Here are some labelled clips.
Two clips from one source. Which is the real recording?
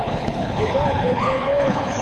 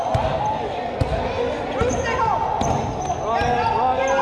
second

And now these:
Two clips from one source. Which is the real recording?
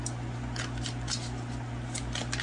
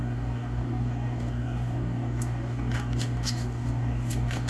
first